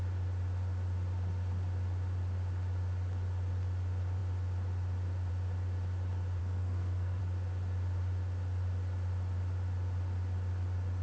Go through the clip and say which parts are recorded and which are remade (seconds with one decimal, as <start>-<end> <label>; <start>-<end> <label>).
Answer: 0.0-6.4 recorded; 6.4-7.2 remade; 7.2-11.0 recorded